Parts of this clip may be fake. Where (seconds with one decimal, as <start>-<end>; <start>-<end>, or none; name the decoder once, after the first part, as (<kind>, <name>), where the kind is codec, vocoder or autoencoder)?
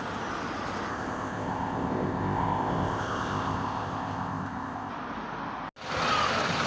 0.9-4.9 (codec, ZipCodec)